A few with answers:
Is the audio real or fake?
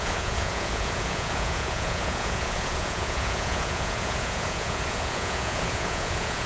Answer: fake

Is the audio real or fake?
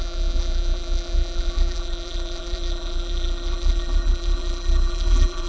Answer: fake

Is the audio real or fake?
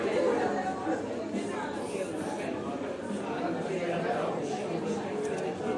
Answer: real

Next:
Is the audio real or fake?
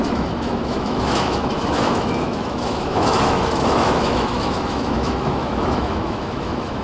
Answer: fake